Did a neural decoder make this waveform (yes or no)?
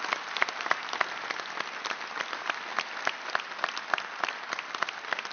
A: no